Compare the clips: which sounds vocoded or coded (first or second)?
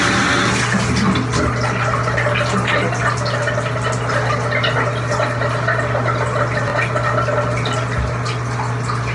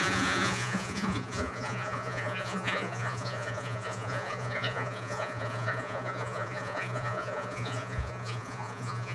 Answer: second